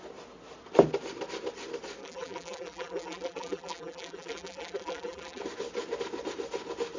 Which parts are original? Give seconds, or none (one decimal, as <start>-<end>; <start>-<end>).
0.0-2.0; 5.4-7.0